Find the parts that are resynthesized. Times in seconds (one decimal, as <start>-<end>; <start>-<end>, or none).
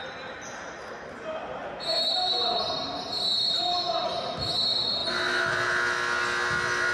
none